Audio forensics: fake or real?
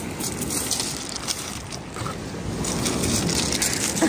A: real